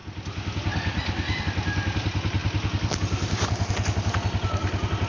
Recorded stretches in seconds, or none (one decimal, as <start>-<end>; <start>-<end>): 0.0-5.1